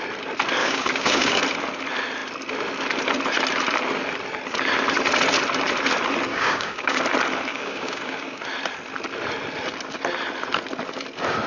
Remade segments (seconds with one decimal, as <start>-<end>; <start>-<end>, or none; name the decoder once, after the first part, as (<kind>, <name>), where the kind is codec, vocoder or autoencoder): 0.6-1.4 (codec, DAC); 6.3-7.0; 7.5-8.4